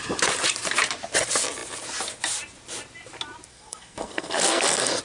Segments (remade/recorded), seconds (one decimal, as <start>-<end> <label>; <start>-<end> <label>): 0.0-3.5 recorded; 3.5-5.0 remade